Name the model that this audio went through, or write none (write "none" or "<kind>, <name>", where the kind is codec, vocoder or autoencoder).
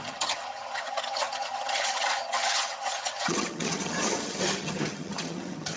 vocoder, HiFi-GAN